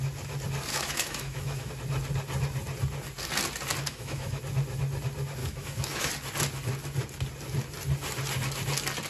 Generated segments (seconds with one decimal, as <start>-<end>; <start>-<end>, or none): 0.7-1.7; 3.9-4.4; 5.4-6.1